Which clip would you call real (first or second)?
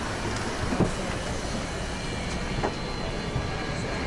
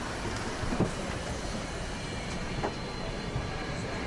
first